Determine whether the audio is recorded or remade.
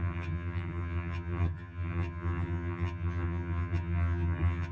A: remade